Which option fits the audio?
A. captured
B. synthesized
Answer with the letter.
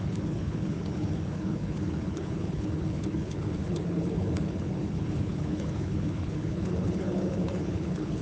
B